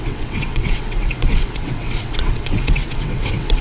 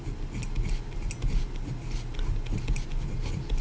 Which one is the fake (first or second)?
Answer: first